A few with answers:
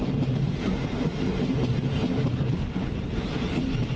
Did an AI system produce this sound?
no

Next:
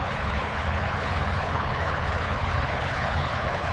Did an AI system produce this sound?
yes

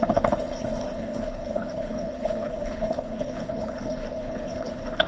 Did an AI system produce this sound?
yes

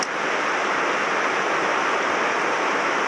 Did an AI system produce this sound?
no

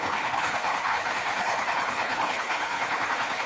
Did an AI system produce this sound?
yes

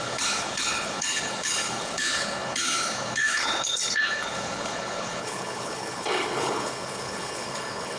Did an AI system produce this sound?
yes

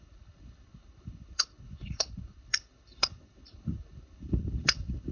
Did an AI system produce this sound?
yes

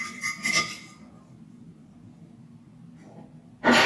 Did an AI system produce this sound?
no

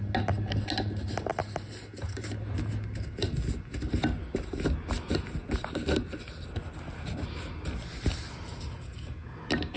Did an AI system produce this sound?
no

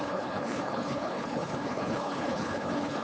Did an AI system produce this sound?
yes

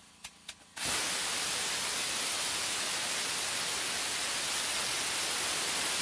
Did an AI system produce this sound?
no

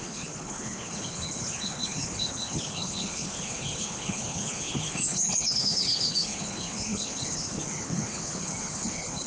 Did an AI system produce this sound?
yes